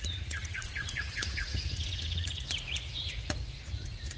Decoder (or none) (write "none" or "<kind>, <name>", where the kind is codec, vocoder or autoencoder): vocoder, Vocos